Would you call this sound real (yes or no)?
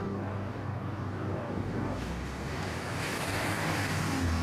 no